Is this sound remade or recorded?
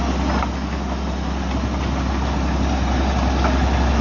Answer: recorded